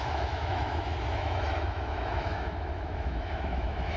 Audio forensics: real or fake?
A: fake